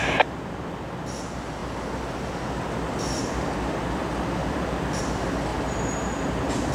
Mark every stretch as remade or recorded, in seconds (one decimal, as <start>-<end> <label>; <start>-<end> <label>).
0.0-0.7 remade; 0.7-4.4 recorded; 4.4-5.0 remade; 5.0-5.5 recorded; 5.5-6.7 remade